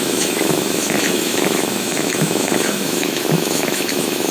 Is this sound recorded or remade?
remade